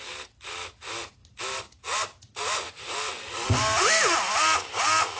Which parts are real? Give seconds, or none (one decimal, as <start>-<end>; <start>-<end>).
0.0-5.2